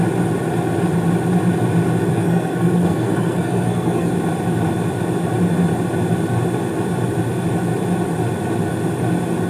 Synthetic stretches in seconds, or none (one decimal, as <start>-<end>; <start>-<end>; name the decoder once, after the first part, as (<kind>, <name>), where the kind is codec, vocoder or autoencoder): 2.1-4.1 (codec, SNAC)